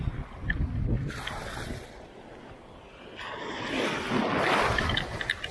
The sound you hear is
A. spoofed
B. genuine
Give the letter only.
B